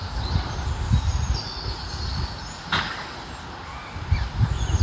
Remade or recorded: recorded